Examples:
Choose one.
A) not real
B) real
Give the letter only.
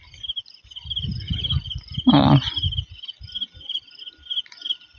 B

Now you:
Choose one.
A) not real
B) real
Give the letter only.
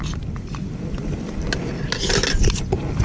B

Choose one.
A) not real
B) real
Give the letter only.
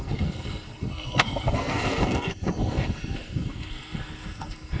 A